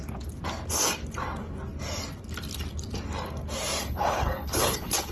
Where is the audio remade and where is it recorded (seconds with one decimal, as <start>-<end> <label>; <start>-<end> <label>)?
0.0-3.8 recorded; 3.8-5.1 remade